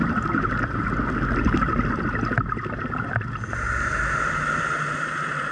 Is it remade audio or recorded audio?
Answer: recorded